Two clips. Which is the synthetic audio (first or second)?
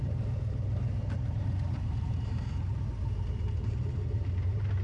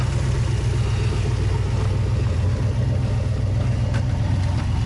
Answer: first